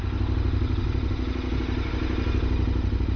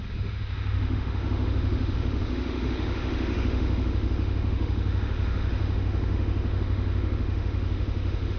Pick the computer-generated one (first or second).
second